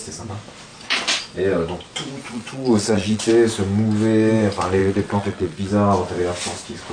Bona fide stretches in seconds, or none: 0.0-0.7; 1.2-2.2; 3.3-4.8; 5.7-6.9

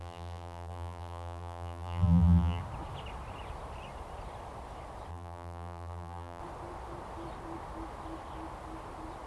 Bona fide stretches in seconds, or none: 2.6-5.1; 6.4-9.3

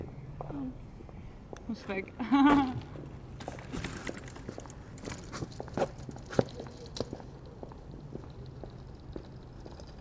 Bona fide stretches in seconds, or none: 0.0-1.0; 2.1-4.0; 8.6-10.0